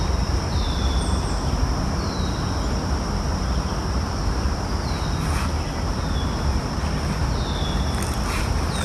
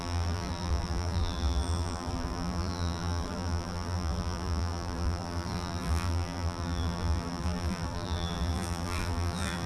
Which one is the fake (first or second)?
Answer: second